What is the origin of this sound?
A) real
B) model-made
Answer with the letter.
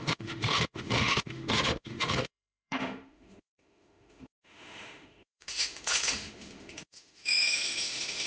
B